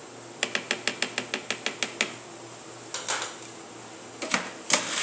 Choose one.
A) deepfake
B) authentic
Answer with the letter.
B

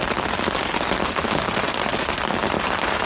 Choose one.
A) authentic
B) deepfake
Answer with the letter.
A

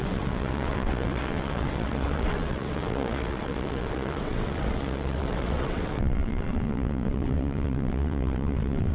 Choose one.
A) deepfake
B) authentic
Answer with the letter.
A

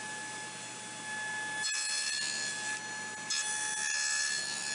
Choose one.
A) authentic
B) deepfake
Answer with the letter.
A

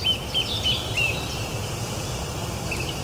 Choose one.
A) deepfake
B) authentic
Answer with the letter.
B